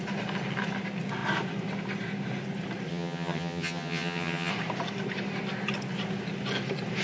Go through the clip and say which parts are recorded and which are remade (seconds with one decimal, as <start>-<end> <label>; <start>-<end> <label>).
0.0-2.9 recorded; 2.9-4.5 remade; 4.5-7.0 recorded